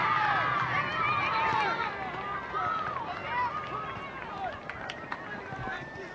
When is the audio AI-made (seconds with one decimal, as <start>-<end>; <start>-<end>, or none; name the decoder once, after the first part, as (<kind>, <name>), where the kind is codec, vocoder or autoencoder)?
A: none